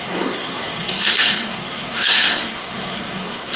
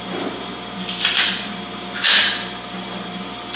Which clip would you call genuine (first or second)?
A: second